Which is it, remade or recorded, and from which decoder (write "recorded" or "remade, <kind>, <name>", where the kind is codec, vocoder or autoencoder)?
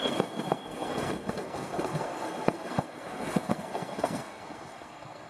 remade, codec, SNAC